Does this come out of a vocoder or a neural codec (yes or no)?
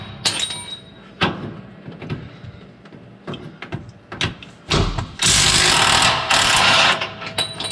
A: no